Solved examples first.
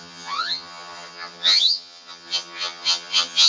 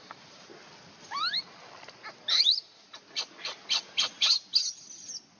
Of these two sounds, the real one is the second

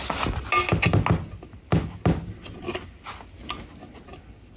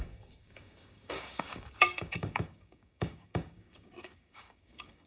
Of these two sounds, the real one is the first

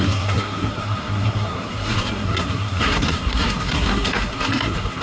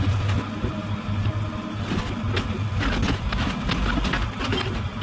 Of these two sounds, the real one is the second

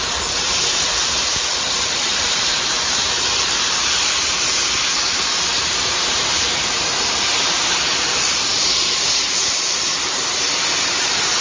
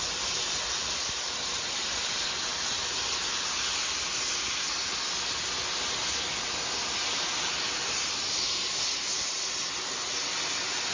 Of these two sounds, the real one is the second